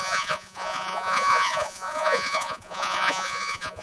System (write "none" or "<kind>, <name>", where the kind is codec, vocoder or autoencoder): vocoder, Vocos